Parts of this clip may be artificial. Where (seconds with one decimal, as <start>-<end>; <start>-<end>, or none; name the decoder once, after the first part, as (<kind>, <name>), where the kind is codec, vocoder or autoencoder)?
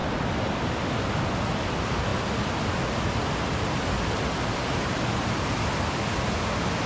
4.5-5.1 (vocoder, BigVGAN v2)